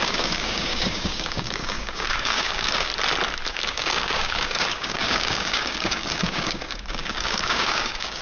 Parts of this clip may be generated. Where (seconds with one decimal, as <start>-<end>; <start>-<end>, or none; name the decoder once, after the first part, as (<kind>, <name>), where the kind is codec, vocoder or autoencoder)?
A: 0.0-2.9 (codec, DAC); 3.5-8.2